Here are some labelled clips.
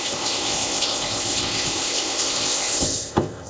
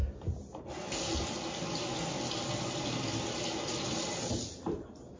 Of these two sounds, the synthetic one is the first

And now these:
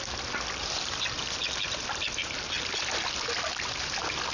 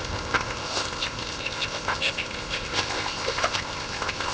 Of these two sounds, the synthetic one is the second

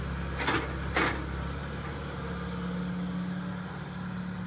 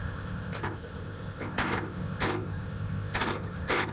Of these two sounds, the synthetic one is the second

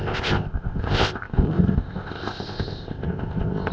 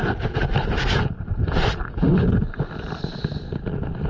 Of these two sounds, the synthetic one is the first